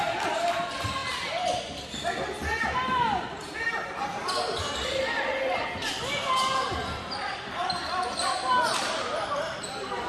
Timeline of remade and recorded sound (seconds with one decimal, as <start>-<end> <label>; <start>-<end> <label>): 0.0-1.0 remade; 1.0-2.6 recorded; 2.6-10.1 remade